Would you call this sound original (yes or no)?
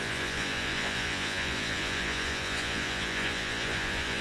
no